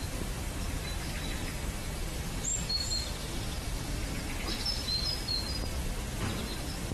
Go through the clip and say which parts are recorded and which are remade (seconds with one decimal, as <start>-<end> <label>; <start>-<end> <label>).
0.0-6.9 recorded